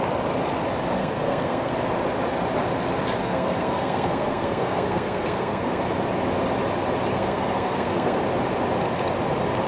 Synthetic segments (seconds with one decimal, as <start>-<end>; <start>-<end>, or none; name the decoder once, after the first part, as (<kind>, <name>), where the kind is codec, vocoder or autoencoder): 1.0-1.7 (codec, SNAC); 3.2-5.8; 7.1-8.2